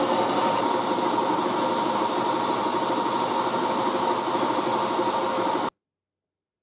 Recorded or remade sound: recorded